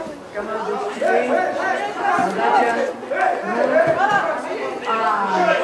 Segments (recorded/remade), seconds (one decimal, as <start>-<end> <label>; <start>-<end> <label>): 0.0-5.6 recorded